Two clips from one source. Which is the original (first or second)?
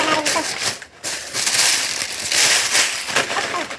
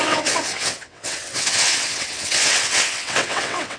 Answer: first